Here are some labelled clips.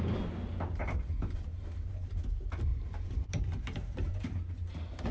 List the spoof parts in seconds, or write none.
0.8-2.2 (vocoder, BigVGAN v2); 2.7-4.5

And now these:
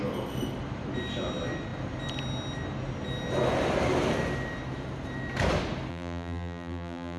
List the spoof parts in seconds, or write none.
5.9-7.2 (vocoder, BigVGAN v2)

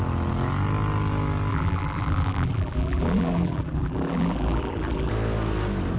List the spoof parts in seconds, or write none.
1.5-5.1 (vocoder, BigVGAN v2)

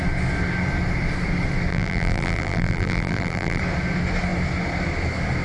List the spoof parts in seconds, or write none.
1.7-3.6 (vocoder, BigVGAN v2)

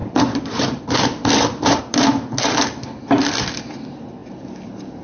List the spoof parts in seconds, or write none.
0.0-1.8 (vocoder, BigVGAN v2)